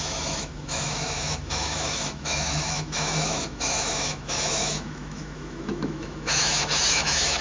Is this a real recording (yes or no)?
no